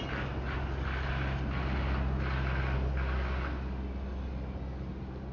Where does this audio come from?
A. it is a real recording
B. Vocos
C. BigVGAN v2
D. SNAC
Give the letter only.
A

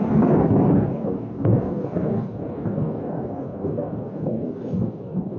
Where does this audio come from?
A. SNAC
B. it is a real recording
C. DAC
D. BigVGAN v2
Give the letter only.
C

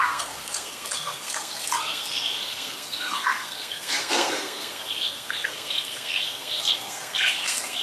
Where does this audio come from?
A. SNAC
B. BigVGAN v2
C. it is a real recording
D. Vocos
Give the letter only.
A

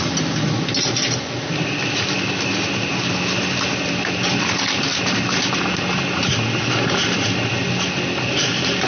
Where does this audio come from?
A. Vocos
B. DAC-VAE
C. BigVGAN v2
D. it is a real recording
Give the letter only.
D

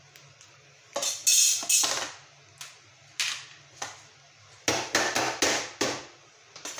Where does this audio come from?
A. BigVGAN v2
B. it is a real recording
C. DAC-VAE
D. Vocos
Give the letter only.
B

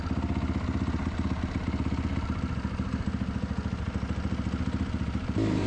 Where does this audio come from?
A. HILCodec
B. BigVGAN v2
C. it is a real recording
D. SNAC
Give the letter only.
C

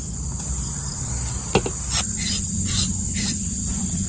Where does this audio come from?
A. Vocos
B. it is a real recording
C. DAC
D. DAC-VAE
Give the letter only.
B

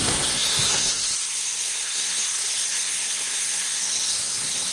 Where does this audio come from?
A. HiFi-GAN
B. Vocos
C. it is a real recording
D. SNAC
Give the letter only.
D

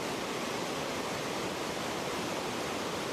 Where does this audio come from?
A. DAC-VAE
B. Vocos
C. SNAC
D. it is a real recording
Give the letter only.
D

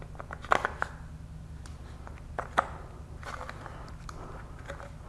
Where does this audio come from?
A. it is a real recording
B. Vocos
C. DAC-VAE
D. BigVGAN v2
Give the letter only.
A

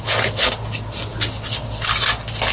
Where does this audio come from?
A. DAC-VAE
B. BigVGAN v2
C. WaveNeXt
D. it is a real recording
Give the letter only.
D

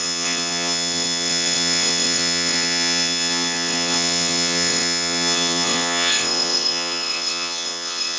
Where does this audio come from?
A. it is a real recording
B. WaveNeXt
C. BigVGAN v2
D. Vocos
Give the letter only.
B